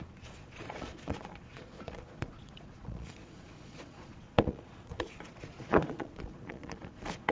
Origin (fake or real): fake